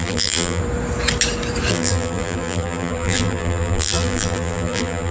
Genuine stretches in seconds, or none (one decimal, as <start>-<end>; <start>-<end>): 0.6-1.7